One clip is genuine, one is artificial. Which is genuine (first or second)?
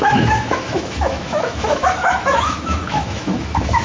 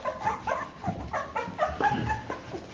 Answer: second